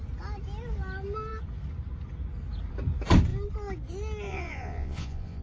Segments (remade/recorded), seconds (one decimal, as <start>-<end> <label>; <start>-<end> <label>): 0.0-4.3 recorded; 4.3-5.4 remade